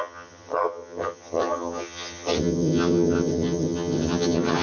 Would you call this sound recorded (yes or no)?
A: no